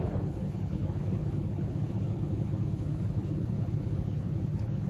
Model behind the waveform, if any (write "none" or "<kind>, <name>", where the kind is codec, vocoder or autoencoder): codec, HILCodec